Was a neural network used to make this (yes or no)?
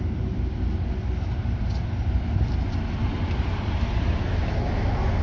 no